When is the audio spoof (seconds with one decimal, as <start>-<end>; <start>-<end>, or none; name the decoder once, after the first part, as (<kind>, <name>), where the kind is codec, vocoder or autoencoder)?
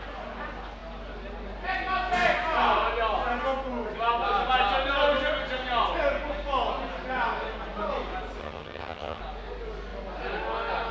8.4-9.2 (vocoder, HiFi-GAN)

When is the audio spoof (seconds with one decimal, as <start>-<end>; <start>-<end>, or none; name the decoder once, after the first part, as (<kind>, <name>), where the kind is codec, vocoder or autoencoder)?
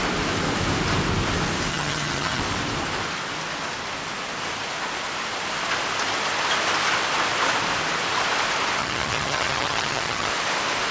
1.7-2.4 (vocoder, HiFi-GAN); 8.8-10.3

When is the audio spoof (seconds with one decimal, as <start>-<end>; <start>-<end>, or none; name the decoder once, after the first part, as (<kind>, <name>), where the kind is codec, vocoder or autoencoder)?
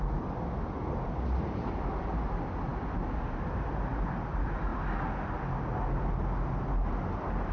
none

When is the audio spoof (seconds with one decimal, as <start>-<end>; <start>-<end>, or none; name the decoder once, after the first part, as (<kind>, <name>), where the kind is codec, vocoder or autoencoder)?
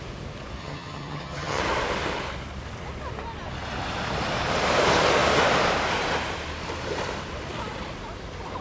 0.6-1.6 (vocoder, HiFi-GAN)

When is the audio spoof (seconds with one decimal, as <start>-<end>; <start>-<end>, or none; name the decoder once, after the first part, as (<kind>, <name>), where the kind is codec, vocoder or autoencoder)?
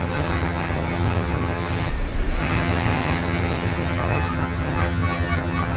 0.0-1.9 (vocoder, HiFi-GAN); 2.4-5.8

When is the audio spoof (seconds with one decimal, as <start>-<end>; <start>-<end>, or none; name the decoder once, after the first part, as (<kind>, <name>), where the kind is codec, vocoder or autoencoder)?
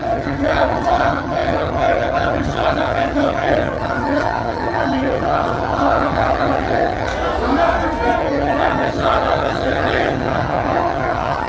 0.0-7.1 (vocoder, HiFi-GAN); 8.2-11.5